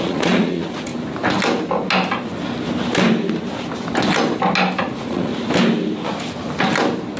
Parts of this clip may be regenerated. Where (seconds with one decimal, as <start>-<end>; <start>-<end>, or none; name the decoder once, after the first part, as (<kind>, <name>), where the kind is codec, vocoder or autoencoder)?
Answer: 0.0-0.9 (vocoder, Vocos); 4.8-5.3